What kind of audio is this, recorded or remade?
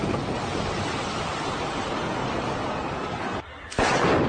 recorded